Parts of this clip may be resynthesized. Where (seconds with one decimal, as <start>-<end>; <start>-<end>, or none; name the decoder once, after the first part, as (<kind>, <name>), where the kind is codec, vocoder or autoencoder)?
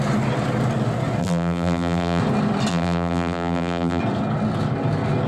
1.2-2.2 (vocoder, BigVGAN v2); 2.7-4.0